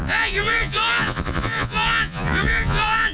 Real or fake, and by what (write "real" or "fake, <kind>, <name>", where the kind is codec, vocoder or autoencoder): fake, vocoder, Vocos